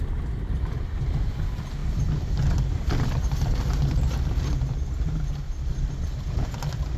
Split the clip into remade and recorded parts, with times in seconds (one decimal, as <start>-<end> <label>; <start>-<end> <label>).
0.0-7.0 recorded